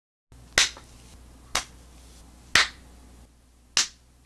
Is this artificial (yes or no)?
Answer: no